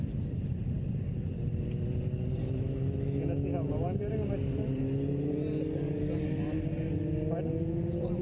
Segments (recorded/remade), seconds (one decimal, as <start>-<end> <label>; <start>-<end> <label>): 0.0-2.4 recorded; 2.4-4.0 remade; 4.0-8.2 recorded